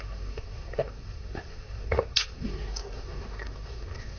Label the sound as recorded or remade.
remade